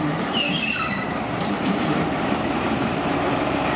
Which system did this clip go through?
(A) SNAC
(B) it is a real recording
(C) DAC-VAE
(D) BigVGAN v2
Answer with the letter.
D